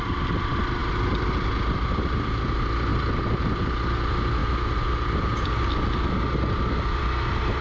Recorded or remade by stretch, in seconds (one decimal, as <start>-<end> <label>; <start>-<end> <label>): 0.0-7.6 recorded